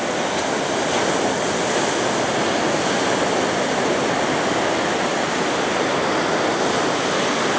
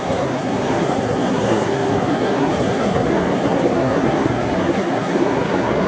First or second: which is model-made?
second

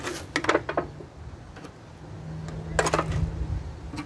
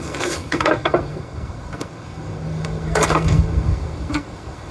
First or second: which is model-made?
second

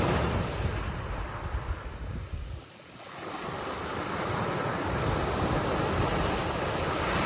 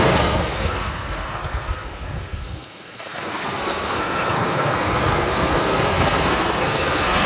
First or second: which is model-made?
second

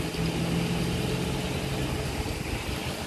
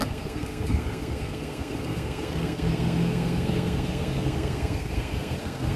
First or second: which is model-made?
second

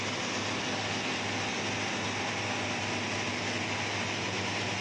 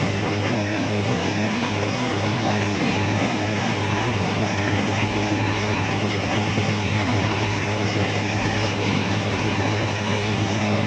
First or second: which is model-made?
second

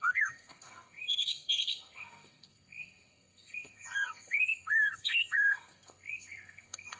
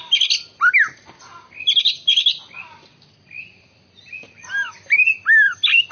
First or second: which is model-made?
first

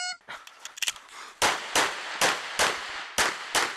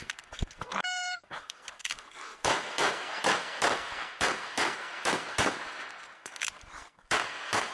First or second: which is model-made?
second